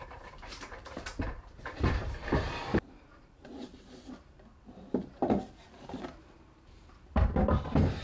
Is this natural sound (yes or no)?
no